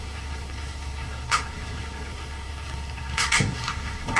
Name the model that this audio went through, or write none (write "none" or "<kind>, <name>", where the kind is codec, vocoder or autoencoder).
codec, SNAC